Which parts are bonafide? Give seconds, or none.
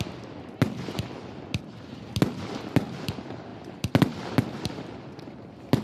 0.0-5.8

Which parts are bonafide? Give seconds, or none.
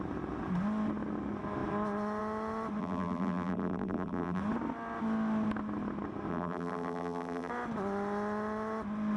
0.0-2.8; 4.4-6.3; 7.5-9.2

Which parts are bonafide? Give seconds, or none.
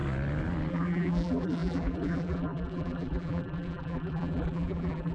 0.0-0.7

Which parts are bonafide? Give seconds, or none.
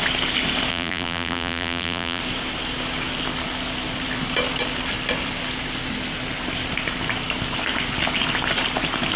0.0-0.7; 2.2-9.2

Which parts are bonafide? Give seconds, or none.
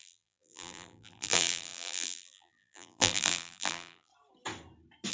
4.1-5.1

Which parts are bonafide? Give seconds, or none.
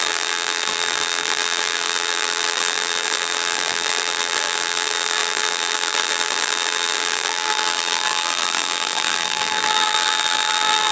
none